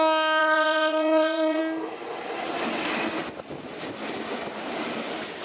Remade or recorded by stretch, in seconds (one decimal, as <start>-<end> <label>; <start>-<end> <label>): 0.0-0.4 recorded; 0.4-1.6 remade; 1.6-5.4 recorded